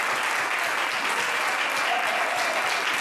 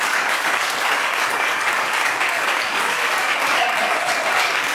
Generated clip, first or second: second